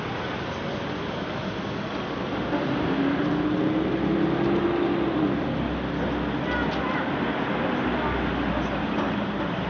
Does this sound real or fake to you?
real